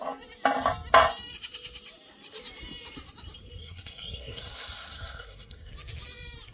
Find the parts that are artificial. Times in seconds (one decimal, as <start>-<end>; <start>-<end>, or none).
3.6-5.7